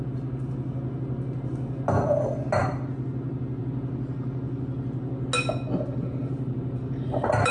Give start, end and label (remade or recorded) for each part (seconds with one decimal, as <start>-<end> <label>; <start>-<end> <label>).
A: 0.0-6.2 recorded; 6.2-7.5 remade